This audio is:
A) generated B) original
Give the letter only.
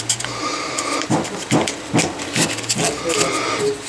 B